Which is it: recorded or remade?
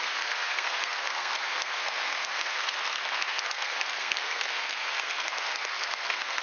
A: remade